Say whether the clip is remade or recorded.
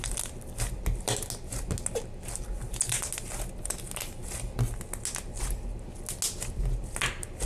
recorded